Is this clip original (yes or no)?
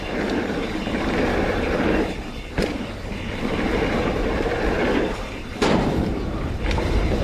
no